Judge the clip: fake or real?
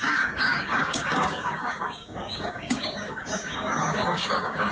fake